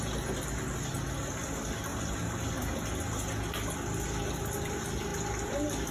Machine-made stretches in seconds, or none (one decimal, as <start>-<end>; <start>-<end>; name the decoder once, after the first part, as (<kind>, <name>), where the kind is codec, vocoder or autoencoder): 1.9-2.5 (vocoder, BigVGAN v2)